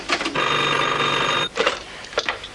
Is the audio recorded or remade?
recorded